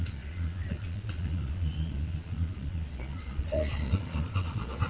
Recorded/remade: remade